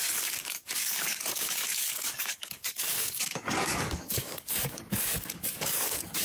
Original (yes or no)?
no